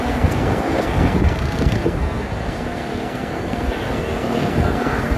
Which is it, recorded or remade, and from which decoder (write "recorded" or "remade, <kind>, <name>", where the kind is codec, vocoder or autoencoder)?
remade, codec, SNAC